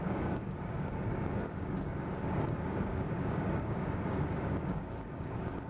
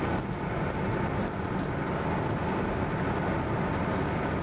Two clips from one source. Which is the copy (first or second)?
first